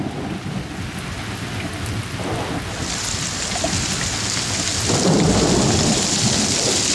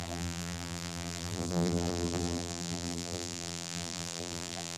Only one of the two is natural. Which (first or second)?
first